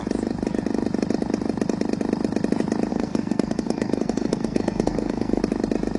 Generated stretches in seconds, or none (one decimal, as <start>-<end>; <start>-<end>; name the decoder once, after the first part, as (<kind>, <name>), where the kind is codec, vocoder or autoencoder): 2.9-5.4 (codec, SNAC)